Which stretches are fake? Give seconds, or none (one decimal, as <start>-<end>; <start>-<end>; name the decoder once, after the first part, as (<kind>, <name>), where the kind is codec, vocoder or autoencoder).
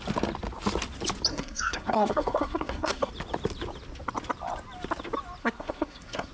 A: 1.3-3.1 (codec, SNAC); 5.4-6.3